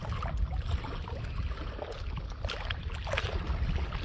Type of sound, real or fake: real